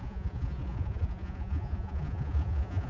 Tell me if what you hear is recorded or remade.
remade